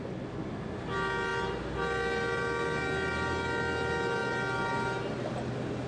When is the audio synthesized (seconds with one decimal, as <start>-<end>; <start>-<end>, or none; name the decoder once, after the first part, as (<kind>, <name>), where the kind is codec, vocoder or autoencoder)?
none